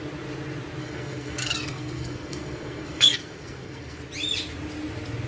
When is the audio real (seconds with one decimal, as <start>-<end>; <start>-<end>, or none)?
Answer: 0.0-0.8; 4.0-5.3